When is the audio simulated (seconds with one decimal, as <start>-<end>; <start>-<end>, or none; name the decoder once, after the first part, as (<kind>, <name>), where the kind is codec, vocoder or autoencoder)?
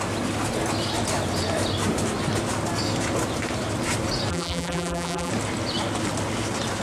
4.3-5.3 (vocoder, BigVGAN v2)